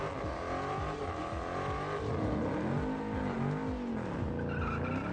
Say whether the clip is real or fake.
real